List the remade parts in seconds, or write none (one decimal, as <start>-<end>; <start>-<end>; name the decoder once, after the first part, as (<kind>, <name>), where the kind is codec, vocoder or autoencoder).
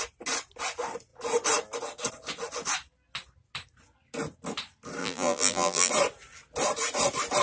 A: 5.0-5.9 (vocoder, BigVGAN v2)